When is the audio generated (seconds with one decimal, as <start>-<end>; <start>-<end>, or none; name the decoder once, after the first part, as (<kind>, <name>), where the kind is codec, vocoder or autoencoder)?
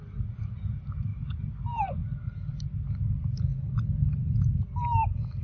none